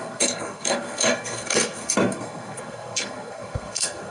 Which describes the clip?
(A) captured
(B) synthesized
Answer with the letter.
B